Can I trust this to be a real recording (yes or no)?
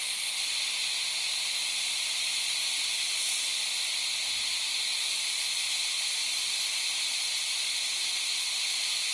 yes